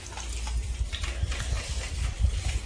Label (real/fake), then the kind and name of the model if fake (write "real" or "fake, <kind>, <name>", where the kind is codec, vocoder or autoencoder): real